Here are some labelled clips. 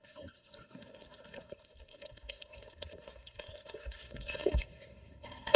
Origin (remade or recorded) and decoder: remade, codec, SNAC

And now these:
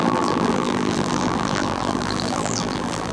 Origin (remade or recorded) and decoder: remade, vocoder, BigVGAN v2